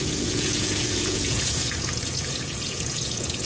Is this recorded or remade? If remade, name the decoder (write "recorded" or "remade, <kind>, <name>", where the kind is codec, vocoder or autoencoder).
remade, vocoder, Vocos